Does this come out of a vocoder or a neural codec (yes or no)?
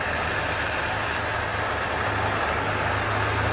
no